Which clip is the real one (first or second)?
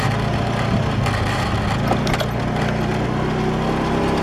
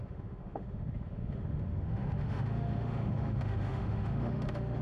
first